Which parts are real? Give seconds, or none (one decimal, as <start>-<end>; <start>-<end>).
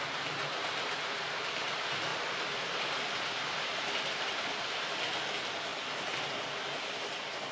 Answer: 0.0-2.1; 5.0-7.5